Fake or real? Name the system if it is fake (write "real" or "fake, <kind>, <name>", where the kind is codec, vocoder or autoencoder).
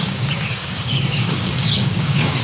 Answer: fake, codec, DAC